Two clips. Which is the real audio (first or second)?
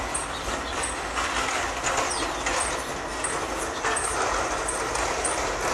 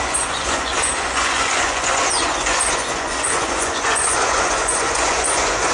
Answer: first